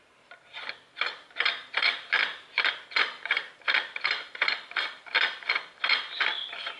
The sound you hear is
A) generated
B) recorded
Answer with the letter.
B